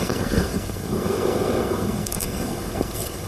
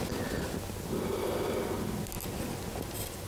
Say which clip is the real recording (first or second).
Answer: second